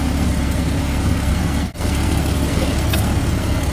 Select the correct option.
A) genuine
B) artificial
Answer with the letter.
B